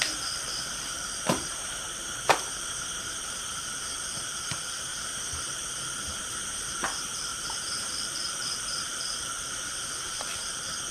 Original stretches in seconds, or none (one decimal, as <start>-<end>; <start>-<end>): 4.9-6.6